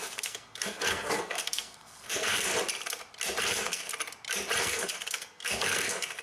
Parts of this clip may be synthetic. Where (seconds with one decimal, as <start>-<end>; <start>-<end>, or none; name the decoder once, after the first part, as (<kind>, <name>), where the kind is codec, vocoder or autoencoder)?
0.0-2.5 (codec, SNAC); 3.4-3.9; 4.6-6.2